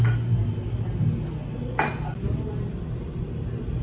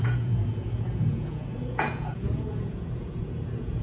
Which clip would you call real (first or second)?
first